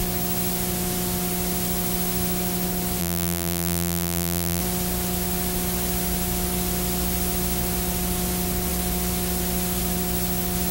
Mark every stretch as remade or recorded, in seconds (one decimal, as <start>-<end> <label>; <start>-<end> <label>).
0.0-3.0 recorded; 3.0-4.6 remade; 4.6-10.7 recorded